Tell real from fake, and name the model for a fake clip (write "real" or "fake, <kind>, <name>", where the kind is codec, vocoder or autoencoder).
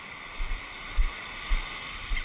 fake, vocoder, BigVGAN v2